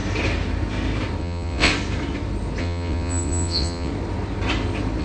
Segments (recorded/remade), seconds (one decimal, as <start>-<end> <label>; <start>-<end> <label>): 0.0-1.2 recorded; 1.2-1.7 remade; 1.7-2.6 recorded; 2.6-3.9 remade; 3.9-5.0 recorded